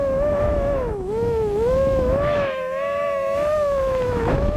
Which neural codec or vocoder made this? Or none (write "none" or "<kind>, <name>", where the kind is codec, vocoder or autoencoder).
autoencoder, DAC-VAE